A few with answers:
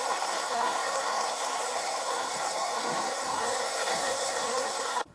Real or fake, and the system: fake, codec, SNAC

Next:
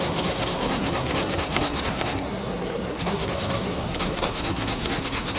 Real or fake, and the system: fake, codec, SNAC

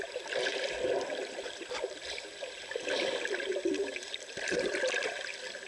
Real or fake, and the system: real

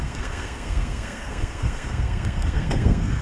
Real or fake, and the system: fake, codec, SNAC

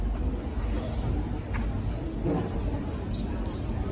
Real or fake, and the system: real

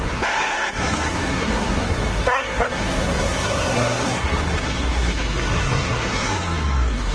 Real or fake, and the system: fake, codec, SNAC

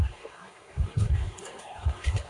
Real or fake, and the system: fake, codec, SNAC